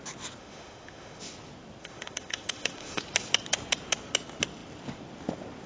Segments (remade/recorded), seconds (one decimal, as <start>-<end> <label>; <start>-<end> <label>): 0.0-0.4 recorded; 0.4-1.2 remade; 1.2-1.8 recorded; 1.8-3.0 remade; 3.0-5.7 recorded